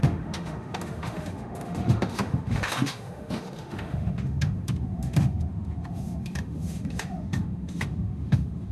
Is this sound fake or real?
fake